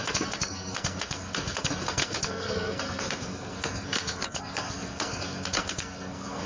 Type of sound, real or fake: fake